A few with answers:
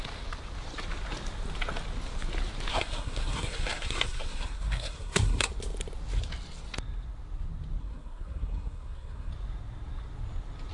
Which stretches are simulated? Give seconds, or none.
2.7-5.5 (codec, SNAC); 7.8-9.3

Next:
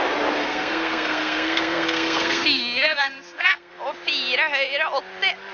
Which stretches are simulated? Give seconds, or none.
0.4-3.7 (codec, SNAC)

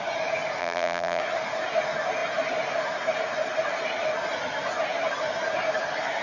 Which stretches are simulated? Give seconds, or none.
0.6-1.2 (vocoder, BigVGAN v2)

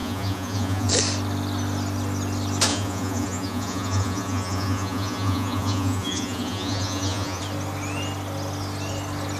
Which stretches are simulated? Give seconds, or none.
0.0-0.9 (vocoder, Vocos); 2.7-7.4

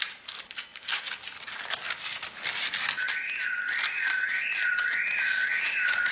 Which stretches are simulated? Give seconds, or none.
none

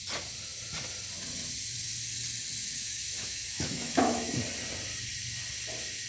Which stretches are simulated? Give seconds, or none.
2.6-4.4 (autoencoder, DAC-VAE)

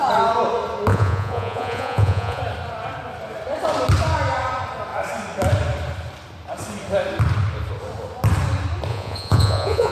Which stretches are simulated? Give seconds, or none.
0.9-2.4 (vocoder, Vocos); 8.9-9.9